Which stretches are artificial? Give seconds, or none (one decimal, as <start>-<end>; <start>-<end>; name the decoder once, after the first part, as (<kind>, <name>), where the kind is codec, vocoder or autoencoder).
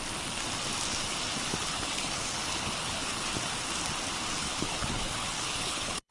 1.5-3.3 (codec, HILCodec); 4.4-6.1